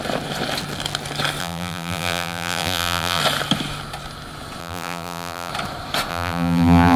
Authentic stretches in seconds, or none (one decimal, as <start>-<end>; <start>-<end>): 0.0-1.4; 3.2-4.6; 5.5-6.1